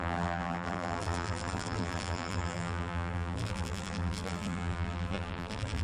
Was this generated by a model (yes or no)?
yes